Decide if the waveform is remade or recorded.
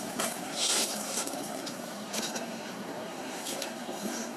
remade